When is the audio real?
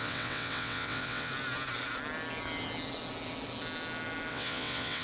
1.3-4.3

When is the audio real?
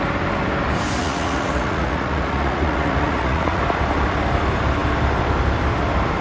0.0-1.0; 3.6-6.2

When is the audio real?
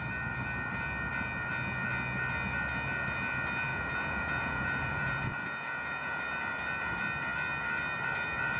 0.0-3.7; 6.2-8.6